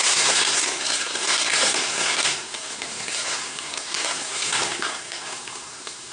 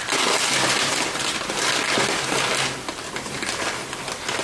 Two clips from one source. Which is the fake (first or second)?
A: first